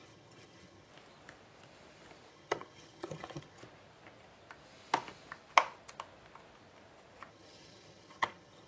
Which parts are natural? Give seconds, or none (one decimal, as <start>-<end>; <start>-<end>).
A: 0.9-2.3; 3.6-7.3